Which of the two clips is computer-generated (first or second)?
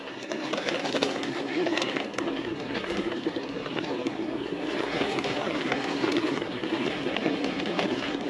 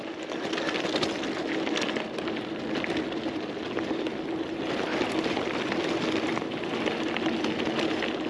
first